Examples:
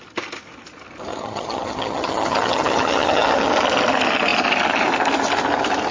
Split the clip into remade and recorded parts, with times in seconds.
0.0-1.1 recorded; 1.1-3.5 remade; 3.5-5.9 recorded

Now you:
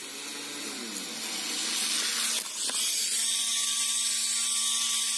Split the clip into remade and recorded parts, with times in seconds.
0.0-5.2 recorded

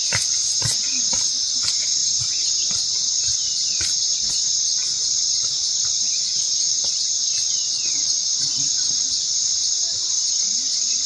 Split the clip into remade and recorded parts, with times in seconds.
0.0-11.1 recorded

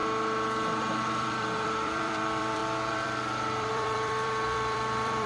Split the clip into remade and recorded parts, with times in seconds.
0.0-0.8 recorded; 0.8-5.3 remade

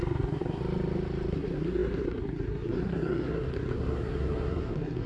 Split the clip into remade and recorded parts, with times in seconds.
0.0-0.6 remade; 0.6-1.3 recorded; 1.3-5.1 remade

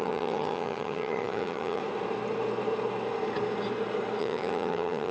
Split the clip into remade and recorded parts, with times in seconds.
0.0-1.8 remade; 1.8-4.2 recorded; 4.2-5.1 remade